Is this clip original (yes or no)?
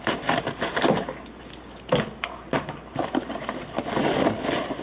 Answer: yes